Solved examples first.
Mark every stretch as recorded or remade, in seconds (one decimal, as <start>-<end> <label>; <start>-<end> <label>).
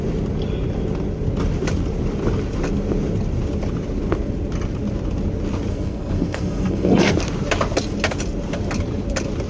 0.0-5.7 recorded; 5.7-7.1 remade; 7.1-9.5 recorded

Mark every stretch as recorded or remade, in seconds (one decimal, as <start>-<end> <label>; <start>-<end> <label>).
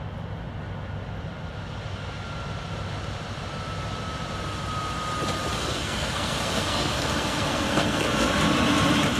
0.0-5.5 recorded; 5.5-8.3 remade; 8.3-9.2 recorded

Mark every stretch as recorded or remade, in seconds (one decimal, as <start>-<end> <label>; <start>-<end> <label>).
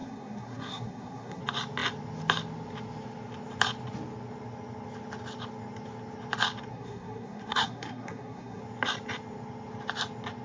0.0-1.4 remade; 1.4-6.7 recorded; 6.7-8.6 remade; 8.6-10.4 recorded